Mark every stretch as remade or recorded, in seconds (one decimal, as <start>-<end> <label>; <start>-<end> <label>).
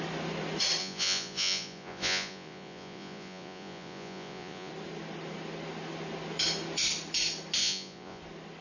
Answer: 0.0-0.8 recorded; 0.8-4.7 remade; 4.7-7.6 recorded; 7.6-8.2 remade; 8.2-8.6 recorded